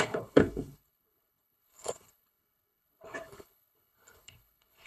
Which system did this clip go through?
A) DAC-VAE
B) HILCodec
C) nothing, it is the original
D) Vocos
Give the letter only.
B